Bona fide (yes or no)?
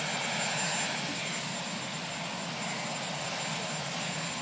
yes